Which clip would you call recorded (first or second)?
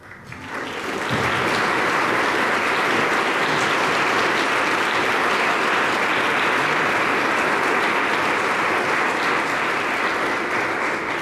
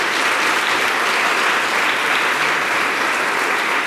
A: first